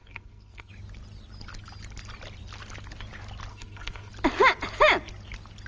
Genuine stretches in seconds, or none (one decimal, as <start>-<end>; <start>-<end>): 0.7-3.5; 4.1-5.7